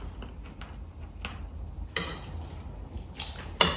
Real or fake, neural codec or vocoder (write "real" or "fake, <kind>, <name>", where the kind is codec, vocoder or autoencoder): real